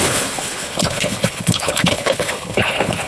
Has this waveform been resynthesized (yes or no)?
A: yes